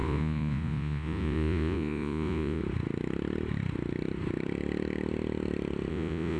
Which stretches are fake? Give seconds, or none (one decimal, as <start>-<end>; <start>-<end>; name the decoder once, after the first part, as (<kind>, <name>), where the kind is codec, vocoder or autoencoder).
0.0-2.6 (vocoder, Vocos); 5.9-6.4